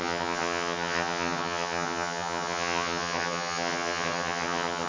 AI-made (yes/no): yes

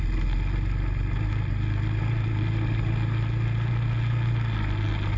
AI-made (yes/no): no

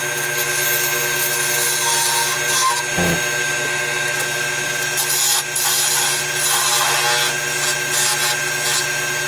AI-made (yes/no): no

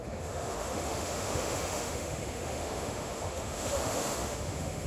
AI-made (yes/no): yes